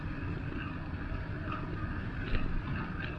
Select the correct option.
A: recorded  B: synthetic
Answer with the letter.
A